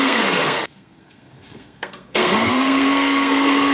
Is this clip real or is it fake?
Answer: fake